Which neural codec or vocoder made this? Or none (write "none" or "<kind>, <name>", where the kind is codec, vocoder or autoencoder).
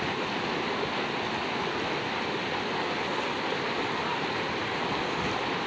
none